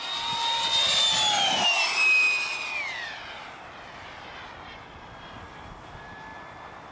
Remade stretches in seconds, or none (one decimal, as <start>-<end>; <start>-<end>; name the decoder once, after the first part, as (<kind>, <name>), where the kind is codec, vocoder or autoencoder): none